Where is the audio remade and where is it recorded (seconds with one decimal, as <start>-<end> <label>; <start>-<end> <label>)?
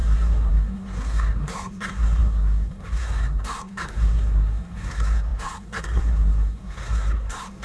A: 0.0-7.6 remade